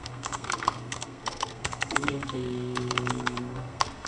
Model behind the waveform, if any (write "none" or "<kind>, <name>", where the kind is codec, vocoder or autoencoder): codec, SNAC